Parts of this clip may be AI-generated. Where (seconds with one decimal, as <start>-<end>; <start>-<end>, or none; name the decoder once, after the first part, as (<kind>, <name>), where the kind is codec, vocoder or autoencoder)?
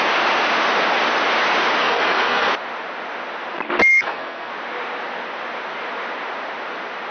1.8-2.5 (codec, SNAC); 3.9-4.5